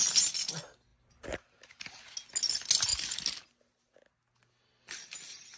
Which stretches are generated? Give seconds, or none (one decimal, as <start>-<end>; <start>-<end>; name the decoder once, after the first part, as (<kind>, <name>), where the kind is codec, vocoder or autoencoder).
none